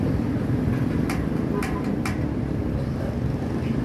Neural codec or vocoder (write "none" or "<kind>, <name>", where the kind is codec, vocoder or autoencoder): none